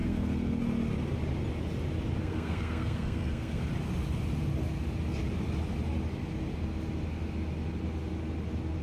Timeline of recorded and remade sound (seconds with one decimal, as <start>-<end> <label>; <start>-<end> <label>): 0.0-0.6 remade; 0.6-2.2 recorded; 2.2-3.6 remade; 3.6-8.8 recorded